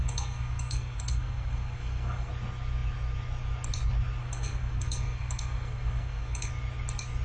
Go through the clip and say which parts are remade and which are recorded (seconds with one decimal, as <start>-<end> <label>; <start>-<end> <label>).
0.0-2.3 remade; 2.3-4.2 recorded; 4.2-6.5 remade; 6.5-7.2 recorded